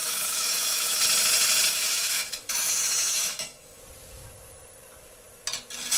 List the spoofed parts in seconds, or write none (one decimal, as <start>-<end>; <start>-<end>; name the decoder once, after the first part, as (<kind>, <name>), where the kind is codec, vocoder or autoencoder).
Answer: 0.0-1.0 (autoencoder, DAC-VAE); 1.7-3.8